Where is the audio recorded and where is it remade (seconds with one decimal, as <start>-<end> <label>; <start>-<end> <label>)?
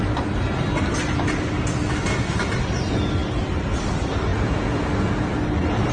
0.0-4.3 recorded; 4.3-4.9 remade; 4.9-5.9 recorded